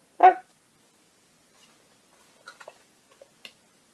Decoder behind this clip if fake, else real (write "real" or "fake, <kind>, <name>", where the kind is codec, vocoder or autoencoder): real